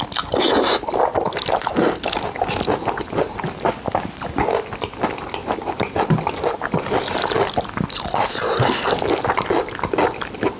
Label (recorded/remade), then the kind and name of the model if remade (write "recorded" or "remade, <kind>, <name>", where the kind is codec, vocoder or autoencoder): recorded